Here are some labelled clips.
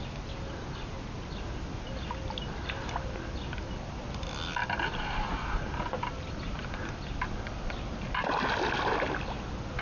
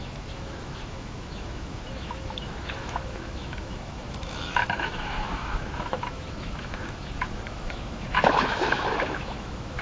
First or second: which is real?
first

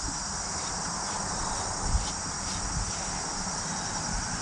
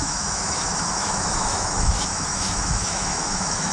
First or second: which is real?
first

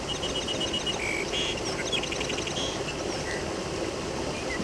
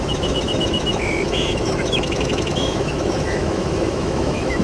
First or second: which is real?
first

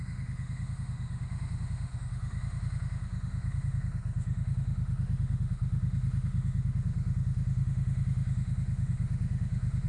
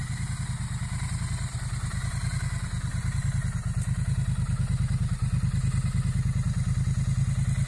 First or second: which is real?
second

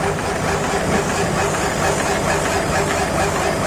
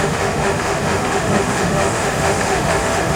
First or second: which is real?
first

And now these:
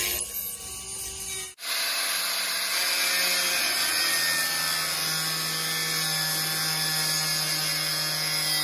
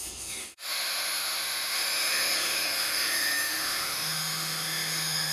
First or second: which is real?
first